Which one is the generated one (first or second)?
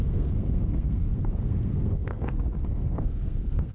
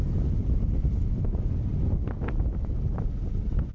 first